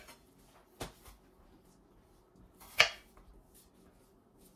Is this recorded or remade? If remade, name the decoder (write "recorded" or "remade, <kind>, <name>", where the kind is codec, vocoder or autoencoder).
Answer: recorded